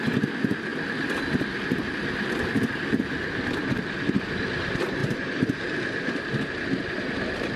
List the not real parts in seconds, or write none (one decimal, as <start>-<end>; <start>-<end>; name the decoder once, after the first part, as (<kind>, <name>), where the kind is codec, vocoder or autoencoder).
none